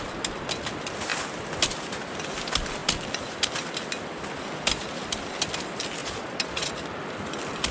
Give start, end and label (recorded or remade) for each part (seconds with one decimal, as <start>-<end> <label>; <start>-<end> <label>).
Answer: 0.0-6.0 recorded; 6.0-6.7 remade; 6.7-7.7 recorded